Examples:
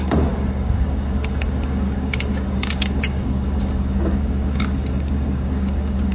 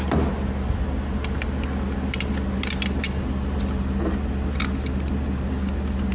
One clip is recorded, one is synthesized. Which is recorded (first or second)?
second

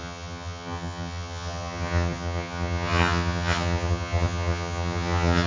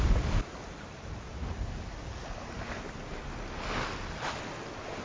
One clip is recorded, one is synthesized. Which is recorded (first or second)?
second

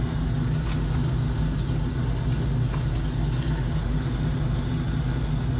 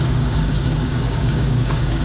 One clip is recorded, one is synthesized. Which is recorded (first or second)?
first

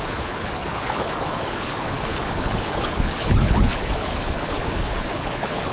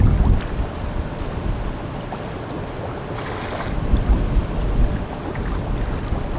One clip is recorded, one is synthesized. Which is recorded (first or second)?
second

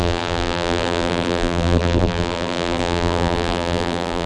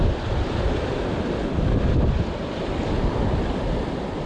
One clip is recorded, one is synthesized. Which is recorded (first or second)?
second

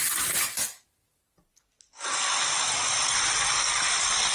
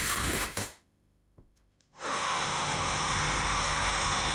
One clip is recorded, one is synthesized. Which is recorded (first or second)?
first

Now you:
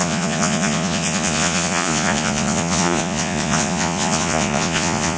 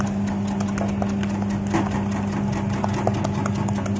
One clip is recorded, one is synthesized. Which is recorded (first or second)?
second